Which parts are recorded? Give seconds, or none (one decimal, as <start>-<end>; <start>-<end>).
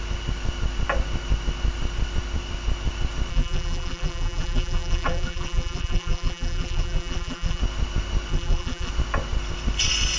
0.0-3.3; 7.6-8.3; 8.9-10.2